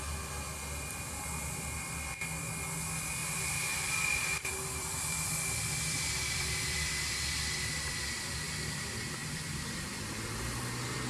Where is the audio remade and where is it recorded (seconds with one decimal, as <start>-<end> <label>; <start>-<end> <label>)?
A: 0.0-3.2 recorded; 3.2-7.9 remade; 7.9-9.2 recorded; 9.2-10.0 remade; 10.0-11.1 recorded